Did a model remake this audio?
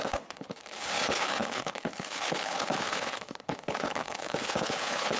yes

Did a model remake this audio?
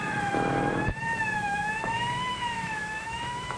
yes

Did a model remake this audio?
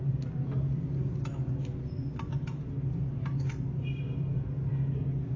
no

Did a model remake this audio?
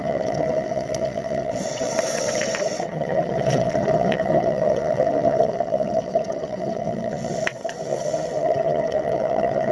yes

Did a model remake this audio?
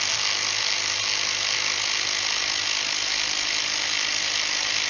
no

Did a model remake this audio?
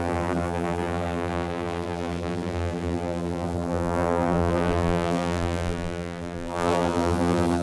yes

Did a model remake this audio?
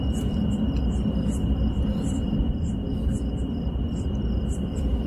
yes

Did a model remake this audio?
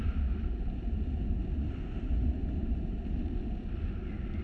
no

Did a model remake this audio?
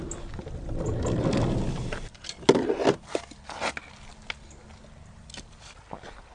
no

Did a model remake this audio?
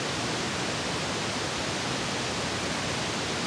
no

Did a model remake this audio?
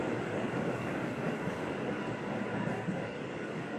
yes